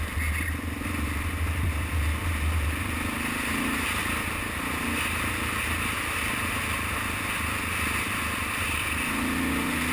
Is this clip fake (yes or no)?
no